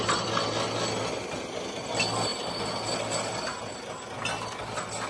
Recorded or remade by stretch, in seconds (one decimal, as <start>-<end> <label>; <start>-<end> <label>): 0.0-5.1 recorded